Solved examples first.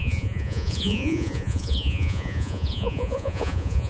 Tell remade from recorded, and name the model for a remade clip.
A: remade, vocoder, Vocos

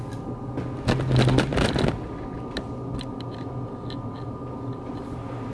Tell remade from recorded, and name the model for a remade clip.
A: recorded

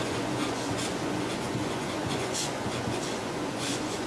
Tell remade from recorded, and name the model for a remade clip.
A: remade, vocoder, Vocos